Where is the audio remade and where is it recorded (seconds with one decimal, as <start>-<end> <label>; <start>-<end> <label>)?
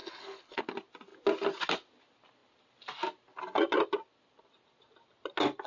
0.0-0.6 remade; 0.6-5.7 recorded